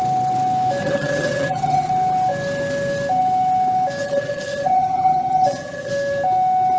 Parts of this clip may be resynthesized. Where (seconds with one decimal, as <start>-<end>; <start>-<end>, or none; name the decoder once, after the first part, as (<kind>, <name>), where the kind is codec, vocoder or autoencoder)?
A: 0.8-1.9 (vocoder, HiFi-GAN); 4.0-5.9